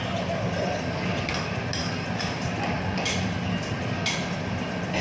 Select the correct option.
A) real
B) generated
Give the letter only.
A